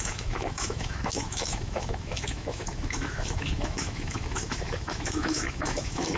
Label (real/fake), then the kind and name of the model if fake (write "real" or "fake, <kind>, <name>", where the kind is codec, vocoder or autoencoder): fake, autoencoder, DAC-VAE